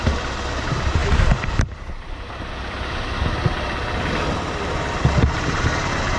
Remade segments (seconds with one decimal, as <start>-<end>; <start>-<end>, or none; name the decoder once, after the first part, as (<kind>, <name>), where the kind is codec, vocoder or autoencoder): none